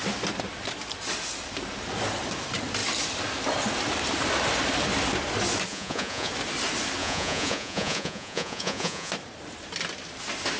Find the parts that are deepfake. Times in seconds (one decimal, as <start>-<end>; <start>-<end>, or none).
5.7-6.3; 7.0-9.1